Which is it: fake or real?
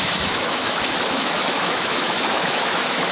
fake